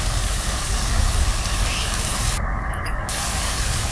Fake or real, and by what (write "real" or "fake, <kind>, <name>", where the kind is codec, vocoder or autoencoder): fake, codec, DAC